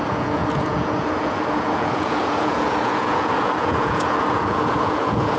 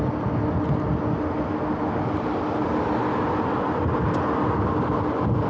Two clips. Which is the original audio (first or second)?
second